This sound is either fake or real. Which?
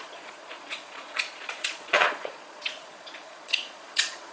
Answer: fake